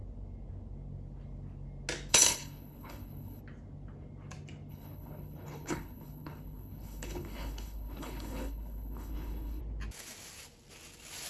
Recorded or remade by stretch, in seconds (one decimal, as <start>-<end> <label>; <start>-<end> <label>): 0.0-2.1 recorded; 2.1-3.4 remade; 3.4-4.7 recorded; 4.7-9.6 remade; 9.6-11.3 recorded